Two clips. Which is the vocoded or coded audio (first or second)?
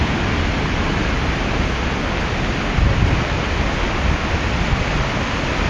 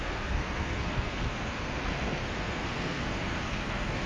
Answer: second